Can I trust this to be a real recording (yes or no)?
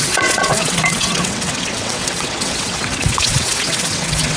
no